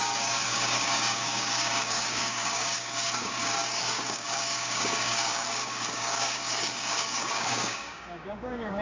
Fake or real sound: fake